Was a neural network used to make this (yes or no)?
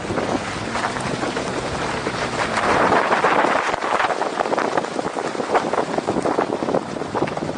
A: no